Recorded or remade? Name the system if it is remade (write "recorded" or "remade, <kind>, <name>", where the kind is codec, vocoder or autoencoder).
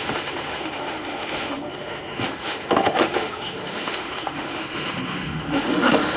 remade, autoencoder, DAC-VAE